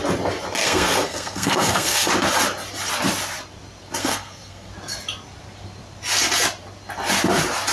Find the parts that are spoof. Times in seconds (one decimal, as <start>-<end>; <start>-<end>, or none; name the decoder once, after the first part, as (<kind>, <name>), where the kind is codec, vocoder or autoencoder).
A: 0.6-2.1 (codec, SNAC); 4.0-4.7